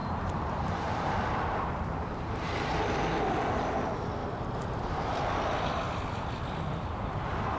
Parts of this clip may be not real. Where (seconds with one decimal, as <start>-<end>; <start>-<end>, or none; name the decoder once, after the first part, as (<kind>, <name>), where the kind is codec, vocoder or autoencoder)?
0.0-7.6 (vocoder, BigVGAN v2)